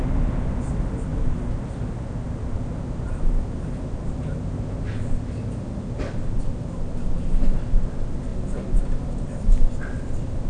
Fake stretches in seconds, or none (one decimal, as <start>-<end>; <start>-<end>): none